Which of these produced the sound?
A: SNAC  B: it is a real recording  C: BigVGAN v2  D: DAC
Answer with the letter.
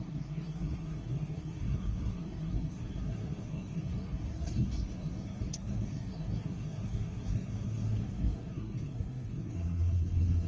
A